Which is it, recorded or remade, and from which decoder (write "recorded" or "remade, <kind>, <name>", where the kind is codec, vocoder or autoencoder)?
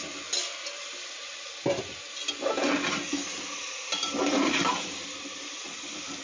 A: recorded